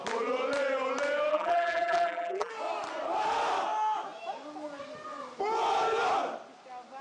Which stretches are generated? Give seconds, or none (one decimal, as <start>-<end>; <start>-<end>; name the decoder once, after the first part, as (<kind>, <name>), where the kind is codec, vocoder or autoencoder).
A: 1.3-2.5 (vocoder, BigVGAN v2)

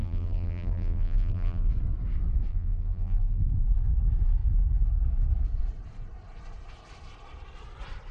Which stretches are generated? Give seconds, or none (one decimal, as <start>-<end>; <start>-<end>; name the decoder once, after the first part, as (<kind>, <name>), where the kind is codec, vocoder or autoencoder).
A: 0.0-1.7 (vocoder, BigVGAN v2); 2.5-3.4